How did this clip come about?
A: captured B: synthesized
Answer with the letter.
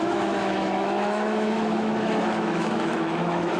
B